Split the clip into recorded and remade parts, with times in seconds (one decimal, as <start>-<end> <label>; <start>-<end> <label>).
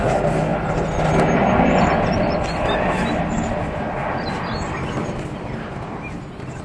0.0-6.6 recorded